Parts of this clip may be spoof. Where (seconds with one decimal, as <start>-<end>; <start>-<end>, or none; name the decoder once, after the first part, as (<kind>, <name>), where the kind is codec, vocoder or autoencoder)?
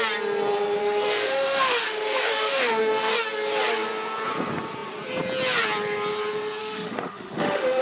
0.8-3.1 (autoencoder, DAC-VAE); 6.6-7.8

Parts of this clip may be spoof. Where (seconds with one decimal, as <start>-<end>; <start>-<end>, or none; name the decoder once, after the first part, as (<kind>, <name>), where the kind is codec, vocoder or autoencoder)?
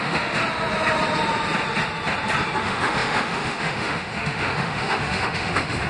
0.0-0.4 (autoencoder, DAC-VAE); 2.6-5.9